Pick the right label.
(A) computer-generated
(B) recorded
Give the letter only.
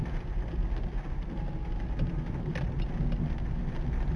B